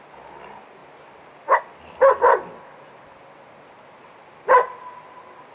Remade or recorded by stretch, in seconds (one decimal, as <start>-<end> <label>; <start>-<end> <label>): 0.0-5.5 recorded